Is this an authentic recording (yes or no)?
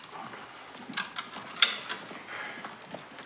yes